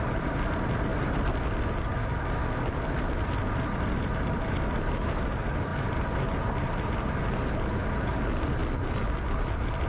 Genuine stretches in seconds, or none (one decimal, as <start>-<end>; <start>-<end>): 0.0-9.9